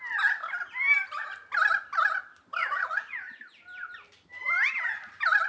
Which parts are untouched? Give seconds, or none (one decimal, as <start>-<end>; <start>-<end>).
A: 0.0-2.6; 3.4-5.5